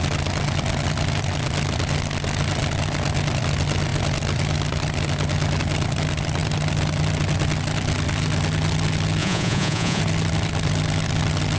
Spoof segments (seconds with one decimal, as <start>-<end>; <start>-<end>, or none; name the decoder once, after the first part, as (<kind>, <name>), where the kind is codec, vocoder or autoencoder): 9.2-10.0 (vocoder, Vocos)